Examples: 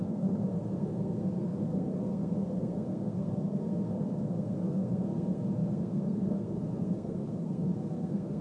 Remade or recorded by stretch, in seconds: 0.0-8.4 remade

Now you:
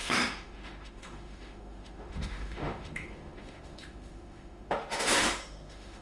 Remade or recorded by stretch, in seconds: 0.0-6.0 remade

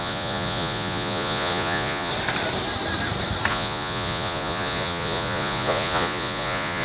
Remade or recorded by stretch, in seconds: 0.0-2.1 remade; 2.1-3.5 recorded; 3.5-6.8 remade

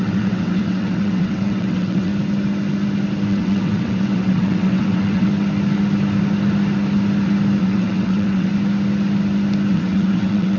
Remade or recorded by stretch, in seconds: 0.0-2.1 remade; 2.1-3.3 recorded; 3.3-5.3 remade; 5.3-7.6 recorded; 7.6-8.5 remade; 8.5-9.7 recorded; 9.7-10.6 remade

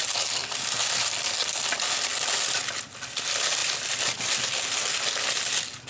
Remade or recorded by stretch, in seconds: 0.0-2.1 recorded; 2.1-2.6 remade; 2.6-3.6 recorded; 3.6-4.4 remade; 4.4-5.9 recorded

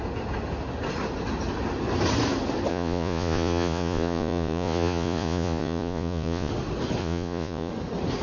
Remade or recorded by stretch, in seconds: 0.0-2.7 recorded; 2.7-6.5 remade; 6.5-7.0 recorded; 7.0-7.7 remade; 7.7-8.2 recorded

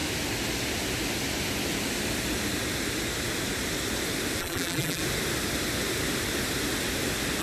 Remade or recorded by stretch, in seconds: 0.0-4.4 recorded; 4.4-5.0 remade; 5.0-7.4 recorded